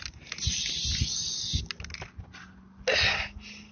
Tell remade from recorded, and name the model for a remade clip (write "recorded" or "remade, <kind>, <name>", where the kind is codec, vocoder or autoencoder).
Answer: recorded